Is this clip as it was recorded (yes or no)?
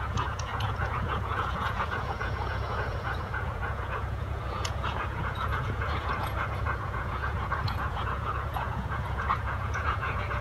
no